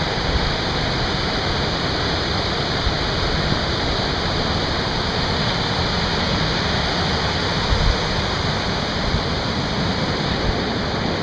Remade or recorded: recorded